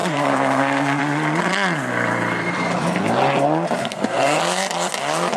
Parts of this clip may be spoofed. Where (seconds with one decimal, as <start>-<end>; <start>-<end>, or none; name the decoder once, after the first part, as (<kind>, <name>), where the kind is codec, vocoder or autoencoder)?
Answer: 0.0-1.0 (codec, SNAC); 3.8-4.4